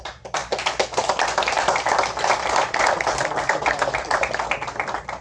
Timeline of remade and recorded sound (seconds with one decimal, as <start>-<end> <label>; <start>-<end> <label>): 0.0-5.2 recorded